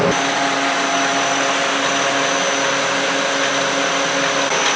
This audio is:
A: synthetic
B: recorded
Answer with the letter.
B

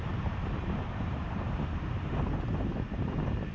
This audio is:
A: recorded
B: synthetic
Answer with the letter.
B